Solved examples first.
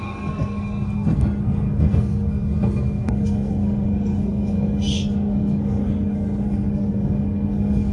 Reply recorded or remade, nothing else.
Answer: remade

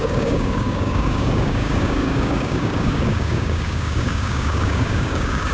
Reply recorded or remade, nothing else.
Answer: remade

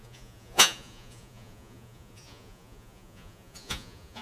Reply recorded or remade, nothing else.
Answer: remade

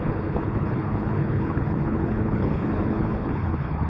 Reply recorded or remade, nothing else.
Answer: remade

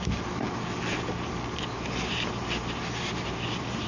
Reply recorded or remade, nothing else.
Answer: recorded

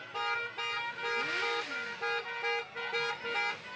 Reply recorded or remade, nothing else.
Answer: recorded